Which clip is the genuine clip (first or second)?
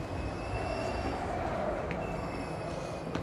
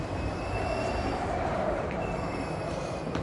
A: first